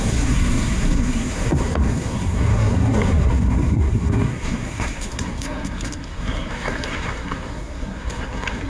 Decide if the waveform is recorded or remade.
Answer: remade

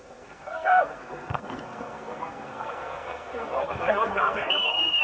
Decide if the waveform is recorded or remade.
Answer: remade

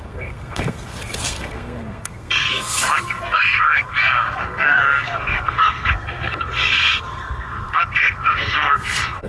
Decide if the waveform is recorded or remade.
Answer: remade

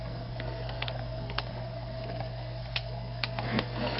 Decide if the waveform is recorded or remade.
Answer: remade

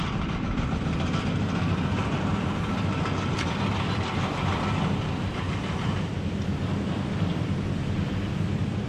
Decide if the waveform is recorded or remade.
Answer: remade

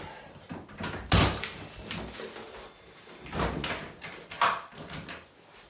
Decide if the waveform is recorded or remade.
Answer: recorded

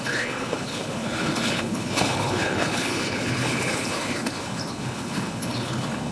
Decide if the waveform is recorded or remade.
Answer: remade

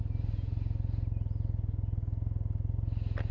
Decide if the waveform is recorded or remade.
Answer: recorded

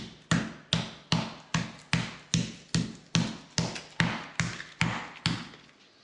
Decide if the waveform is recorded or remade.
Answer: recorded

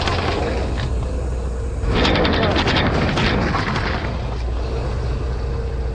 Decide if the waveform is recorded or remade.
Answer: recorded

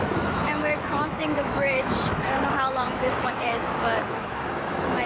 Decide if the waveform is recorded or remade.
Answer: remade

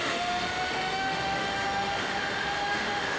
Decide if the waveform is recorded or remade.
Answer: remade